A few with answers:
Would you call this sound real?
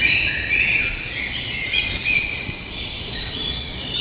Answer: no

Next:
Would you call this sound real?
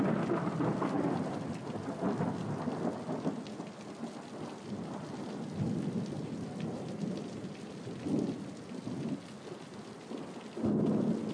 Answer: yes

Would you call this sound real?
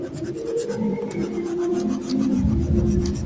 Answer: no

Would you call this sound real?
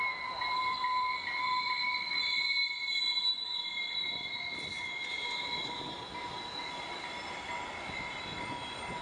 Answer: no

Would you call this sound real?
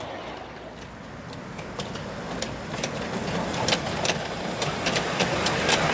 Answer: yes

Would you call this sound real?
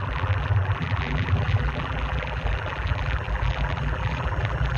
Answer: no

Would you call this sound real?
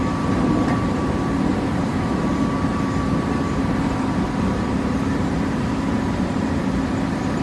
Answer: no